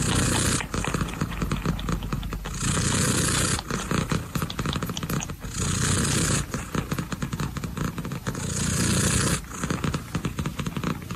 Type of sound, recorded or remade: recorded